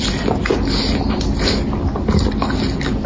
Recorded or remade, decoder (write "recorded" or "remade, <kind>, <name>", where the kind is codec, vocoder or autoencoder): recorded